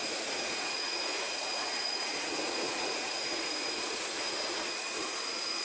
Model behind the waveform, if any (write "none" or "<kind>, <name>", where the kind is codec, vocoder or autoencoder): vocoder, Vocos